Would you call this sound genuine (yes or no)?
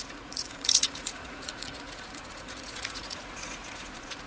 no